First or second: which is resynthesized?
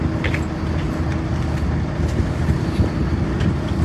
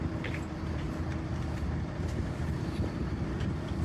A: second